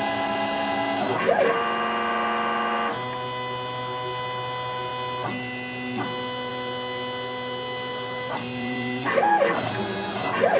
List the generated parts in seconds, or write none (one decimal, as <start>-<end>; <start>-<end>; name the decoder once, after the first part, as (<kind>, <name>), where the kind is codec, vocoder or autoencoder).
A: 7.9-9.3 (vocoder, BigVGAN v2)